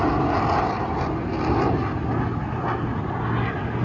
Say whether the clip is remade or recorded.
recorded